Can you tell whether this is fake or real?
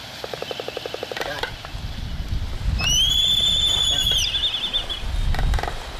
real